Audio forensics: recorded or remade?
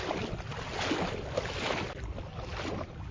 recorded